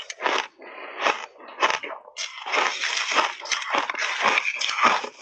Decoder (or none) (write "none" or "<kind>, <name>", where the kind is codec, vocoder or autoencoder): none